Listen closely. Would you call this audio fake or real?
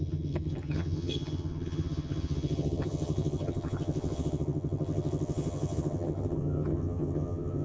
fake